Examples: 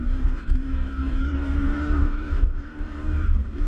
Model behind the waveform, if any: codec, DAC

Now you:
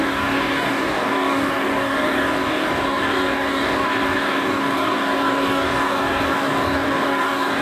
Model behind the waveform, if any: codec, DAC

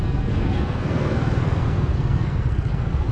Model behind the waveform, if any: codec, SNAC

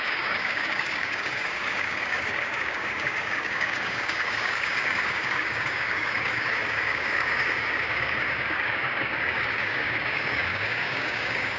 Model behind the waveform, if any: codec, DAC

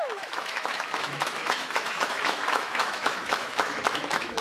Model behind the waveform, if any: autoencoder, DAC-VAE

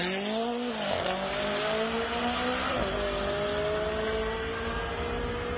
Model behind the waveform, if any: none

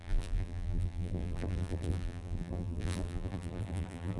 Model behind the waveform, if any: vocoder, BigVGAN v2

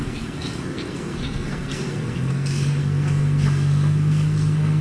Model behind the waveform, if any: codec, SNAC